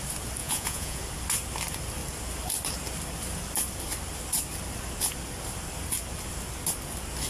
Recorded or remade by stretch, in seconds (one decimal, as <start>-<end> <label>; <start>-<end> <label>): 0.0-0.4 recorded; 0.4-1.0 remade; 1.0-7.3 recorded